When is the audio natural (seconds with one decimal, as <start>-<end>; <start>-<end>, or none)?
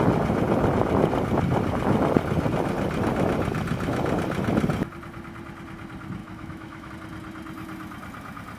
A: 0.0-6.2; 6.9-8.6